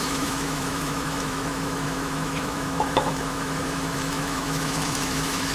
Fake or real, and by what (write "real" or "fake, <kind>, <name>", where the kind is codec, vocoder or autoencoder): fake, autoencoder, DAC-VAE